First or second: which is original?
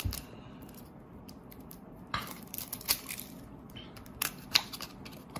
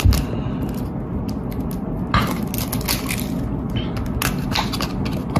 second